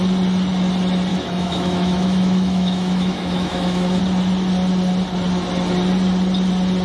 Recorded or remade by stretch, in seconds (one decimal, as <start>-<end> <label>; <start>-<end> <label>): 0.0-1.1 recorded; 1.1-4.0 remade; 4.0-6.8 recorded